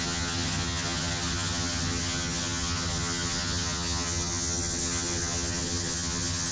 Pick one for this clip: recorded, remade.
remade